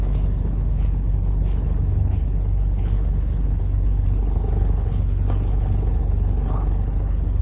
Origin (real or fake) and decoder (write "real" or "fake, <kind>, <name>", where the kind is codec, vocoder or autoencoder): fake, codec, HILCodec